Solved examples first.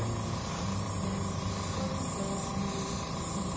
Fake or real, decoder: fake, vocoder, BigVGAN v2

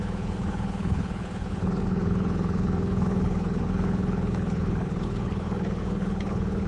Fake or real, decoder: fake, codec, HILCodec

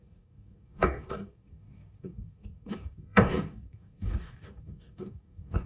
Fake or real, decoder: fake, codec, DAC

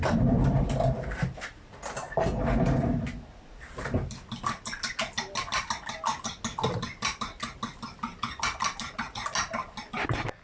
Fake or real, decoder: real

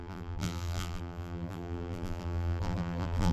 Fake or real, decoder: fake, vocoder, BigVGAN v2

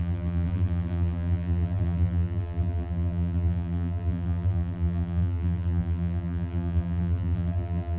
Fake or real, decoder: fake, vocoder, BigVGAN v2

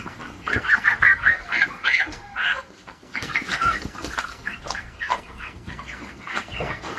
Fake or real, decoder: fake, codec, SNAC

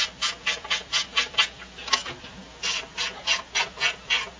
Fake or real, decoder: real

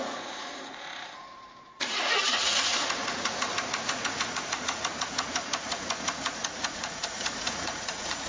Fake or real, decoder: fake, vocoder, Vocos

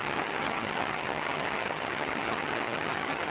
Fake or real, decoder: fake, vocoder, HiFi-GAN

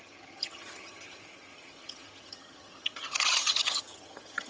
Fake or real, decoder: fake, vocoder, HiFi-GAN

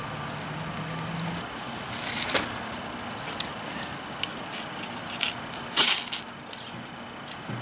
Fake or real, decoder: real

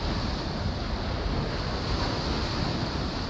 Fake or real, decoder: real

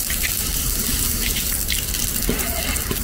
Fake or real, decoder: real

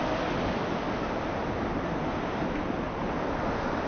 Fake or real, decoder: real